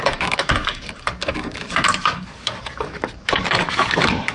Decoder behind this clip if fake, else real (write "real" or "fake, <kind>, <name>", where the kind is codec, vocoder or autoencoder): fake, codec, DAC